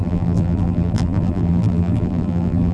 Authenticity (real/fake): fake